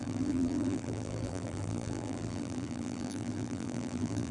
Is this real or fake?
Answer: fake